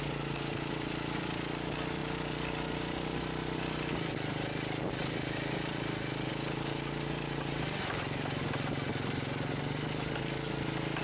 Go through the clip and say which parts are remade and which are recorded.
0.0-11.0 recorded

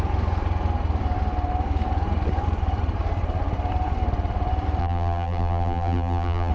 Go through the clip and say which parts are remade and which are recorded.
0.0-4.8 recorded; 4.8-6.5 remade

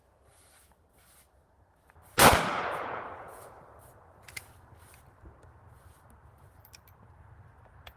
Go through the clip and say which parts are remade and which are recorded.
0.0-2.5 recorded; 2.5-3.5 remade; 3.5-8.0 recorded